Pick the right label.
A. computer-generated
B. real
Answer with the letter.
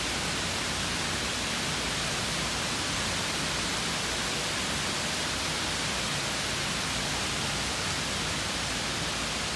B